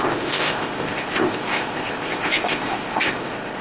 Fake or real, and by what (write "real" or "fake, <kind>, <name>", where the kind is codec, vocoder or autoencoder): fake, codec, ZipCodec